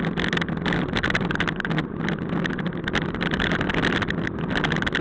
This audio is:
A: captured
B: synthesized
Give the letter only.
A